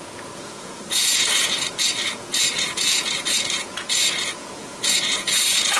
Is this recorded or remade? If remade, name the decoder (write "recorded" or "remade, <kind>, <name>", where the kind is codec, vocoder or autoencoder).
remade, vocoder, Vocos